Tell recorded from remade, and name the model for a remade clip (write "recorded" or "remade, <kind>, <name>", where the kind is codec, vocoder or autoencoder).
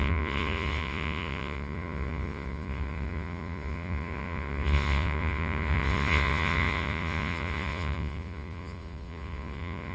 remade, vocoder, Vocos